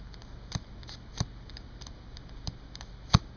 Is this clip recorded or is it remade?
recorded